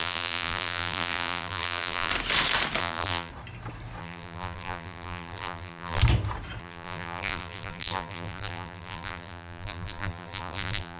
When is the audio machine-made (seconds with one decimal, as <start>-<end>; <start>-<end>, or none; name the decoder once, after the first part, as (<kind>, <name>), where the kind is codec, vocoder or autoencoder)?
0.0-2.1 (vocoder, BigVGAN v2); 2.8-3.3; 4.0-6.0; 6.6-11.0